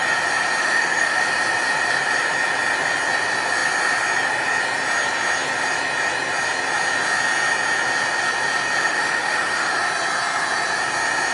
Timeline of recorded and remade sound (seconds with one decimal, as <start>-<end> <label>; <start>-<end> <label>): 0.0-0.6 recorded; 0.6-1.2 remade; 1.2-8.8 recorded; 8.8-9.8 remade; 9.8-11.3 recorded